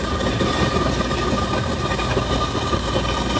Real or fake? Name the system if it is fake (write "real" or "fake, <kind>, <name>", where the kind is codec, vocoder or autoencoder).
real